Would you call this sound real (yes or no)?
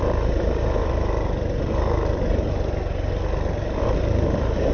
no